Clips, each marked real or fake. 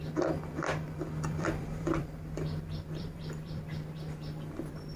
fake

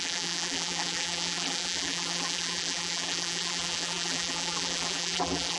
fake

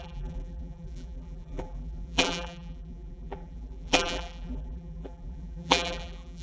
fake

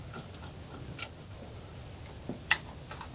real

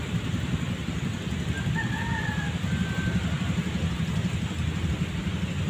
real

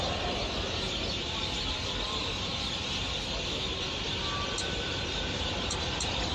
real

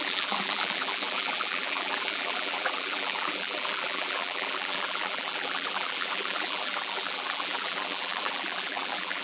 fake